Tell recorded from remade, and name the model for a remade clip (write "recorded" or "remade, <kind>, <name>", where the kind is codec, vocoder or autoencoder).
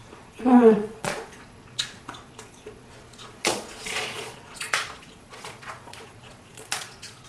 remade, vocoder, Vocos